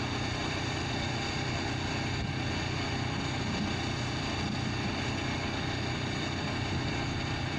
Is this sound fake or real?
real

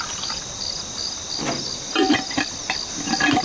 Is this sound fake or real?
real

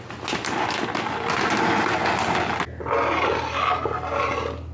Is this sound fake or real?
real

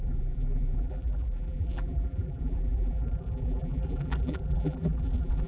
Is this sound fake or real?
fake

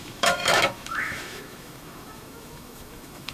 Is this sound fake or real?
fake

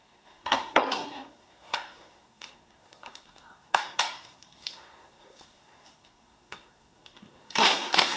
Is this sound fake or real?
fake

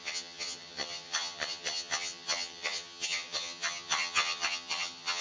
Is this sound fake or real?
fake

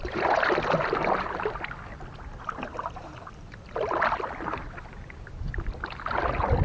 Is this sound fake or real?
real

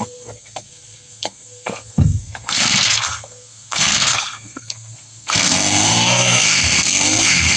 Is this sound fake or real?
fake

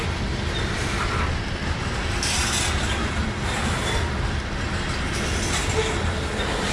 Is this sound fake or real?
real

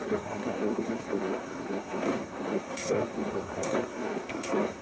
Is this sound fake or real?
fake